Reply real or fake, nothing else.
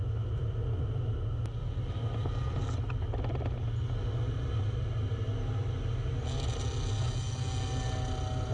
real